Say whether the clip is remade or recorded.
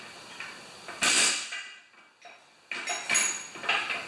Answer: recorded